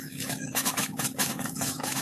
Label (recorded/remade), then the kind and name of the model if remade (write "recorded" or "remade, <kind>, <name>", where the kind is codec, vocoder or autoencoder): remade, autoencoder, DAC-VAE